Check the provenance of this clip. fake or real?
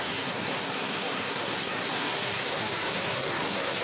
fake